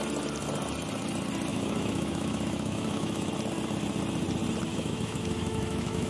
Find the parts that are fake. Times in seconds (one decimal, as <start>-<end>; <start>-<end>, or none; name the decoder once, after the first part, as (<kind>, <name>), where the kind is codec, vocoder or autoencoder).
1.5-3.3 (autoencoder, DAC-VAE); 4.7-6.1